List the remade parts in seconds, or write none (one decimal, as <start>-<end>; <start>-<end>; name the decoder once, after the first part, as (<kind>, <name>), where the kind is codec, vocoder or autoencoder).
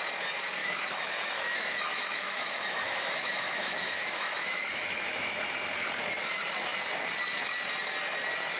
0.6-5.4 (autoencoder, DAC-VAE)